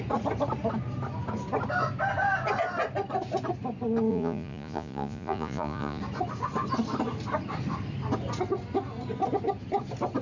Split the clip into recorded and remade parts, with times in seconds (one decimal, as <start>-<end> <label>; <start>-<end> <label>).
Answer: 0.0-4.1 recorded; 4.1-6.0 remade; 6.0-10.2 recorded